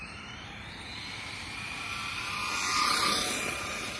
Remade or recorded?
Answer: recorded